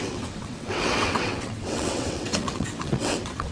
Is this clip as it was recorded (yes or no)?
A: no